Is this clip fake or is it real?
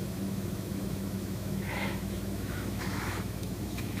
fake